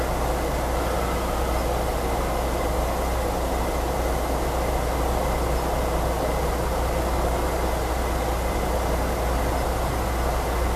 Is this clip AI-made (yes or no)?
no